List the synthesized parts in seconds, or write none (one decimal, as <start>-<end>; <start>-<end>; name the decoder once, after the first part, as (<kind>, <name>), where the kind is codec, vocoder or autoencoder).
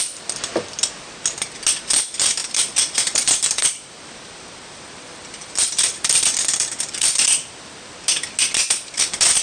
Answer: 2.4-6.8 (vocoder, BigVGAN v2)